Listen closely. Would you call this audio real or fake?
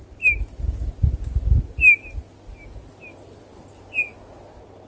real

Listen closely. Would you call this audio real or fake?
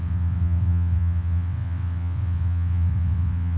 fake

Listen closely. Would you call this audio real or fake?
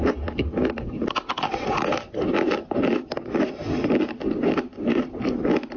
real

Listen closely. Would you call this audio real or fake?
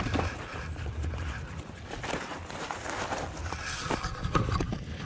real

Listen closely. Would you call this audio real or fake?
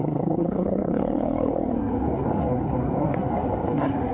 fake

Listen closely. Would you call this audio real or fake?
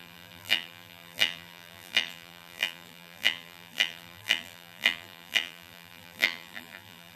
fake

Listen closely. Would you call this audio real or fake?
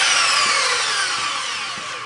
real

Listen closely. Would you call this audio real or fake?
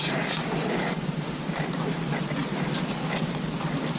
real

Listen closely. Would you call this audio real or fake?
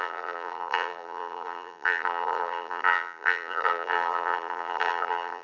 fake